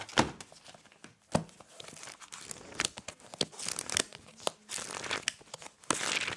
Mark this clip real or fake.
real